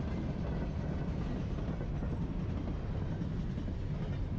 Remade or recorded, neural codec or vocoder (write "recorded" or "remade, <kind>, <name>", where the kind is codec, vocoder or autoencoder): recorded